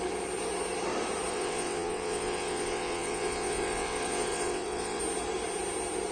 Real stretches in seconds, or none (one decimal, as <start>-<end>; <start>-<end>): 0.0-1.3; 5.0-6.1